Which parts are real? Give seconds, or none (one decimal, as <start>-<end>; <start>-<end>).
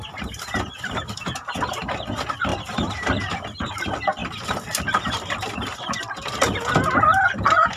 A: 0.0-4.2; 6.4-7.8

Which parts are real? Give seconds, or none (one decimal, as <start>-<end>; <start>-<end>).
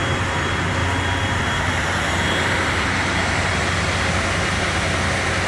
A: 0.0-5.5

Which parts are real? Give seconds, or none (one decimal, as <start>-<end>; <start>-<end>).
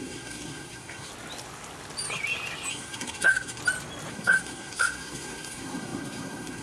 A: 1.1-2.7; 3.6-4.1